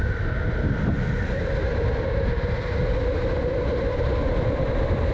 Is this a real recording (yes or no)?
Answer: yes